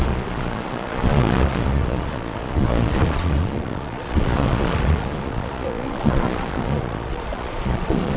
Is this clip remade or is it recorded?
remade